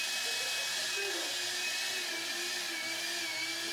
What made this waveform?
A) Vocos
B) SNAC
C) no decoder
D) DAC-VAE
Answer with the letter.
C